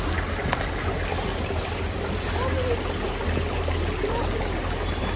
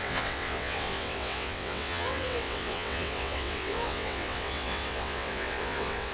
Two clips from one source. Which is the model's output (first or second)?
second